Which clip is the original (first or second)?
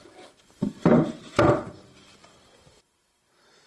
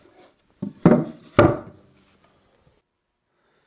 second